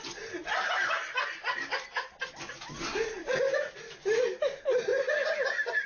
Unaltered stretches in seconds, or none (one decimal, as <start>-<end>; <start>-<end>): 0.0-5.9

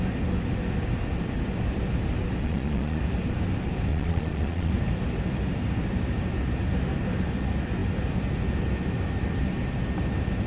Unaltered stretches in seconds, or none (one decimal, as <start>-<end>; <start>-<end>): 0.0-2.4; 3.0-3.9; 4.7-10.5

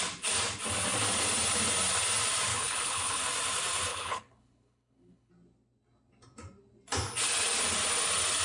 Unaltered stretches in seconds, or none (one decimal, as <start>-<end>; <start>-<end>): 0.0-2.5; 3.2-3.9; 5.3-8.4

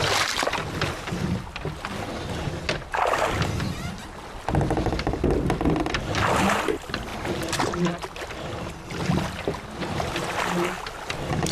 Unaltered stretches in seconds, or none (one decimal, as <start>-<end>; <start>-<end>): 0.0-11.5

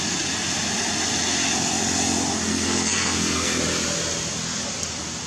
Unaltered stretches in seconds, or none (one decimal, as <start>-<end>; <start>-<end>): 0.0-2.5; 3.6-5.3

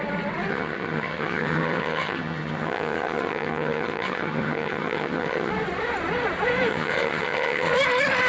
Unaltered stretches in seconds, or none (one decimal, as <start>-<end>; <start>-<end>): 0.0-0.5; 5.5-6.7; 7.7-8.3

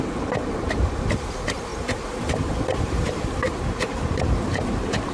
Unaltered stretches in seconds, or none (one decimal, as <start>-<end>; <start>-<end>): 0.0-1.7